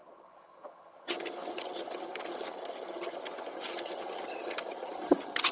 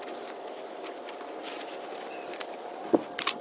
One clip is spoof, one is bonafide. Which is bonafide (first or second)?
second